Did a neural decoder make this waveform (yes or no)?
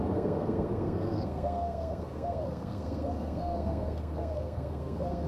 yes